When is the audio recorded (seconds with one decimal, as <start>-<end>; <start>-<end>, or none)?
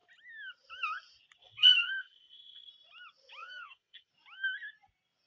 0.0-1.4; 2.7-3.4; 4.1-5.3